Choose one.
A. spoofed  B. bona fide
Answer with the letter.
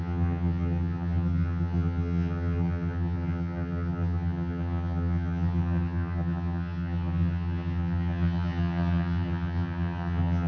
A